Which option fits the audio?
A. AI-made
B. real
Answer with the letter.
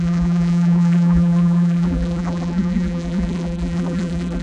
A